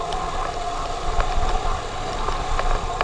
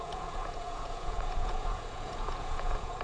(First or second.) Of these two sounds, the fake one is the second